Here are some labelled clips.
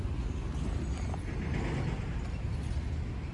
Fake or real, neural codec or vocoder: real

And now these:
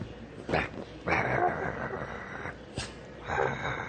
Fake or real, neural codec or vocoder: fake, vocoder, BigVGAN v2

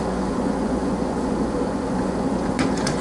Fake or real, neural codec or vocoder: fake, vocoder, Vocos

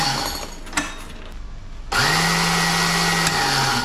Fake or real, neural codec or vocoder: real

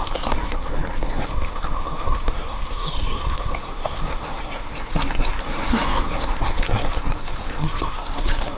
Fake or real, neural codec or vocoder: fake, codec, SNAC